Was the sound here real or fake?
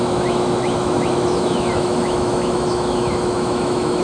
fake